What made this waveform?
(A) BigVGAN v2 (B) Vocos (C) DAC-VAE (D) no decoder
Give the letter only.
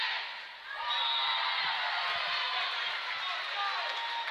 D